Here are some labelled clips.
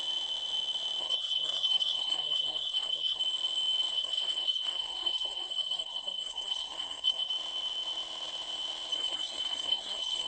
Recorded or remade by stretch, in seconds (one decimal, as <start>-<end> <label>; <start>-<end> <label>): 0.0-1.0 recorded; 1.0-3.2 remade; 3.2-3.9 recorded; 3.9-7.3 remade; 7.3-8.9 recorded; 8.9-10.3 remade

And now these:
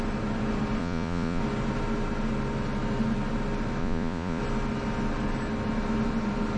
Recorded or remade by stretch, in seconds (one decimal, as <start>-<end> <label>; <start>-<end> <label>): 0.0-0.8 recorded; 0.8-1.4 remade; 1.4-3.8 recorded; 3.8-4.4 remade; 4.4-6.6 recorded

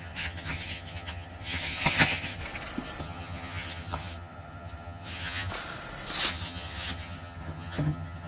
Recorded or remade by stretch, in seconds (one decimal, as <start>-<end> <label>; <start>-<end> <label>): 0.0-2.4 remade; 2.4-3.0 recorded; 3.0-5.5 remade; 5.5-6.3 recorded; 6.3-8.3 remade

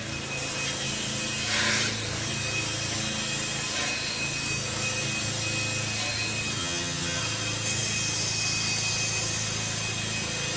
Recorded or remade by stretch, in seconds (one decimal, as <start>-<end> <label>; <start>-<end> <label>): 0.0-6.6 recorded; 6.6-7.2 remade; 7.2-10.6 recorded